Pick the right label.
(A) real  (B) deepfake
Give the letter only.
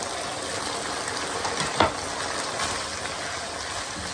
A